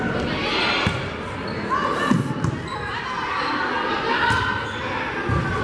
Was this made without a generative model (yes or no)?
yes